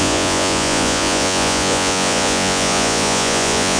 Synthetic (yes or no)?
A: yes